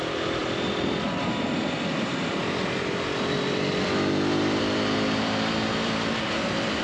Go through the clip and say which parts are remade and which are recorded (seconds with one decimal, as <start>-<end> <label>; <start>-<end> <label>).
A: 0.0-6.8 remade